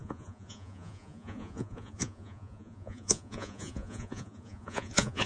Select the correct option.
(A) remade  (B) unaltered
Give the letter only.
A